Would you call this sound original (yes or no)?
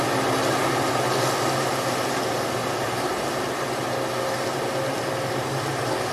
yes